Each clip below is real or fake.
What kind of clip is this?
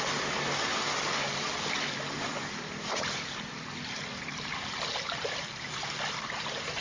real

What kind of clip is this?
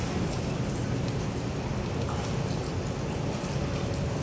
real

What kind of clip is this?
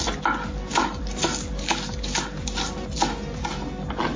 real